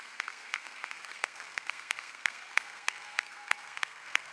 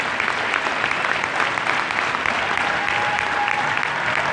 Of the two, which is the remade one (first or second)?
first